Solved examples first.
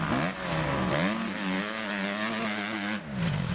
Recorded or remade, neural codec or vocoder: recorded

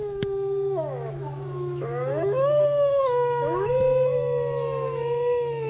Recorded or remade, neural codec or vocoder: remade, autoencoder, DAC-VAE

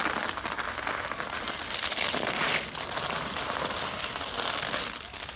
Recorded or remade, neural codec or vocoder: recorded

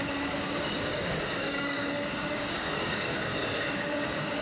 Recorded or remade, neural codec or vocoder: remade, codec, DAC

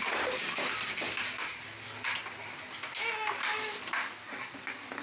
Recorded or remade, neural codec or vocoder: recorded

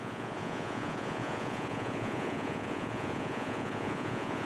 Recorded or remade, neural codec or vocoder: remade, vocoder, Vocos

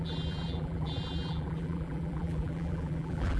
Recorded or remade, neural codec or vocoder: remade, vocoder, BigVGAN v2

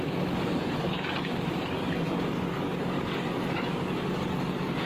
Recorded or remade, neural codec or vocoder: remade, codec, DAC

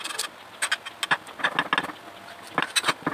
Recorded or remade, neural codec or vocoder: recorded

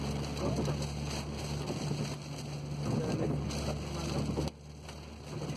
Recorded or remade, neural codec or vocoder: recorded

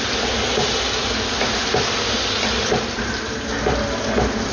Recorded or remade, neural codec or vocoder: recorded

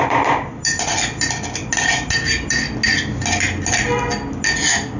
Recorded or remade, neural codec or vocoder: recorded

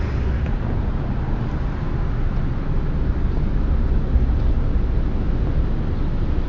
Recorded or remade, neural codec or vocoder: recorded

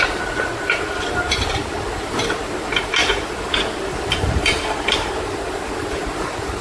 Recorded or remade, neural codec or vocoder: remade, vocoder, BigVGAN v2